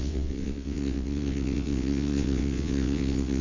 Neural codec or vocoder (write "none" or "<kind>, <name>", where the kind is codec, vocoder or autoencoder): vocoder, WaveNeXt